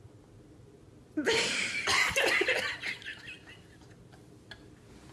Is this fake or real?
real